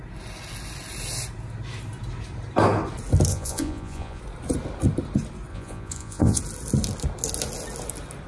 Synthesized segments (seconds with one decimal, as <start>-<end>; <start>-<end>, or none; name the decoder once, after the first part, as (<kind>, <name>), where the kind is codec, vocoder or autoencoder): 3.3-4.2 (vocoder, Vocos); 5.5-6.4